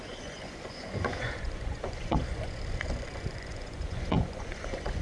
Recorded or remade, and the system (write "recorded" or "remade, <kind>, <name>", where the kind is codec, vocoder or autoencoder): remade, vocoder, Vocos